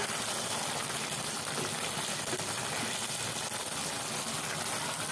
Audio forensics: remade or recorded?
recorded